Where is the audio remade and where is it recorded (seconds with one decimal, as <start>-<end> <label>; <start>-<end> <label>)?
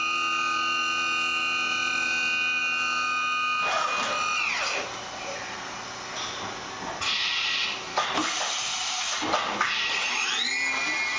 0.0-11.2 recorded